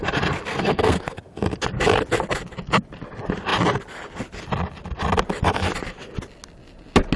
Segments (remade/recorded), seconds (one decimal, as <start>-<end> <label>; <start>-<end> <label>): 0.0-0.5 recorded; 0.5-1.2 remade; 1.2-7.2 recorded